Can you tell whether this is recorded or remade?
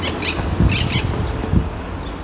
recorded